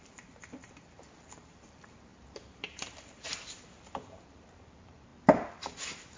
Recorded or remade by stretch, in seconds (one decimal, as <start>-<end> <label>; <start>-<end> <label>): 0.0-5.1 remade; 5.1-5.6 recorded; 5.6-6.2 remade